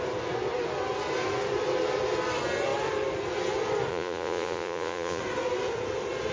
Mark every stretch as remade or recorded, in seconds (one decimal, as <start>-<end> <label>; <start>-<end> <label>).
0.0-3.9 recorded; 3.9-5.2 remade; 5.2-6.3 recorded